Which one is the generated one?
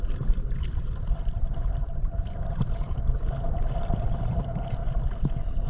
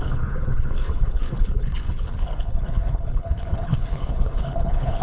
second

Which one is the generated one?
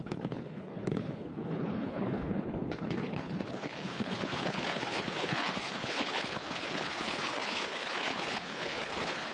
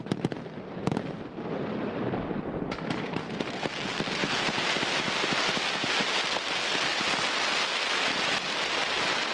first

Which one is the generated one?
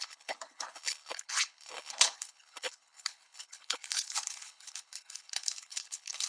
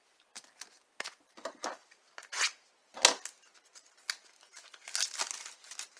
first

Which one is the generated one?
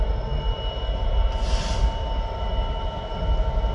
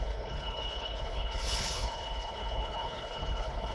second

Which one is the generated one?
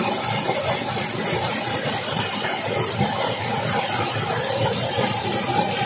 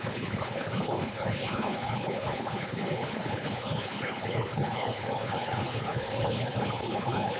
second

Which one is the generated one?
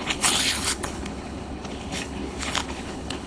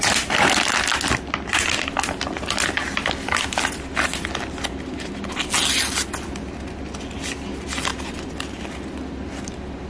first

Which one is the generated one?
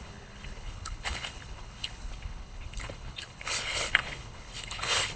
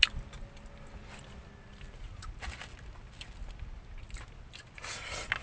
first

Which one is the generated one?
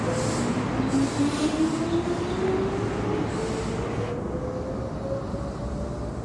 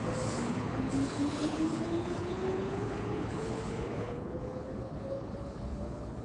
second